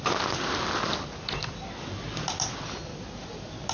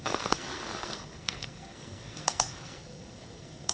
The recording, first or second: first